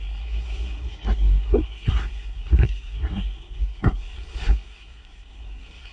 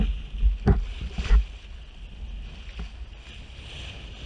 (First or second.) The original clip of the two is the second